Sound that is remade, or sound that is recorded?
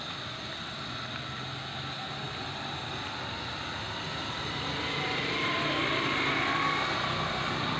recorded